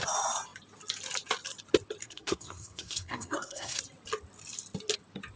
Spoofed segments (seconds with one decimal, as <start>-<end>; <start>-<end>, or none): 2.0-3.8